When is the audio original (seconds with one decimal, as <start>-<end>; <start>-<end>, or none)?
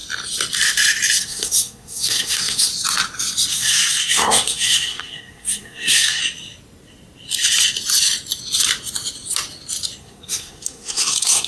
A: 0.0-1.2; 2.7-3.5; 6.2-10.0